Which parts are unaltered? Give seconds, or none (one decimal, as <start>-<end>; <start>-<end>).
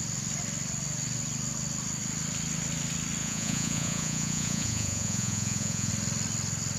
0.0-3.2; 5.9-6.8